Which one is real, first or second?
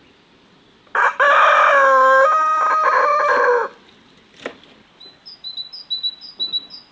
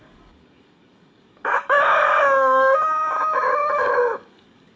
first